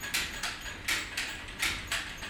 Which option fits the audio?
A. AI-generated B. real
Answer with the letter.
B